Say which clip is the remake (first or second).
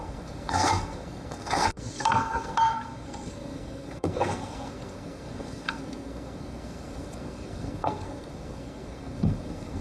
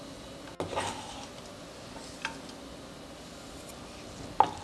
first